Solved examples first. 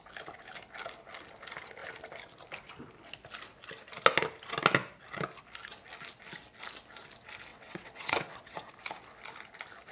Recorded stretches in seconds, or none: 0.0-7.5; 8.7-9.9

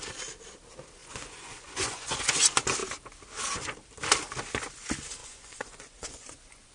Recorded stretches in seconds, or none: 0.0-1.0; 2.4-5.2